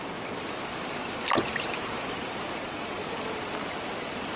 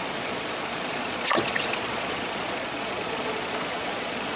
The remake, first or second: second